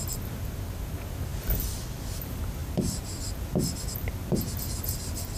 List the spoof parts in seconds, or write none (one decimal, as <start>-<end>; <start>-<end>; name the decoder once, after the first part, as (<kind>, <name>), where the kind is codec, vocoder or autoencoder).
0.0-1.3 (vocoder, BigVGAN v2); 2.0-5.4